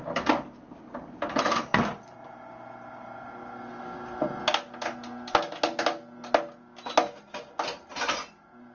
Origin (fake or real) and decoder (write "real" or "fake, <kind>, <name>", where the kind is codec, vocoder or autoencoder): real